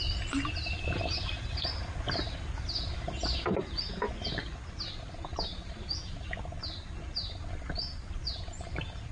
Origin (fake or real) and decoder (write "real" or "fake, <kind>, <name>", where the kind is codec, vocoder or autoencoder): real